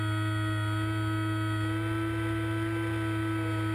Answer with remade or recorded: recorded